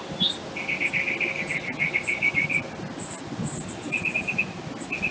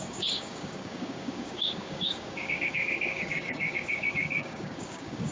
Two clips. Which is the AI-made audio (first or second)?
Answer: second